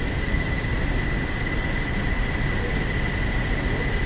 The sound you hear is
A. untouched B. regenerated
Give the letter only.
A